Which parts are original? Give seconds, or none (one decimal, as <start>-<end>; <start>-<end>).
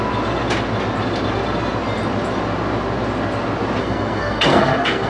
0.0-3.8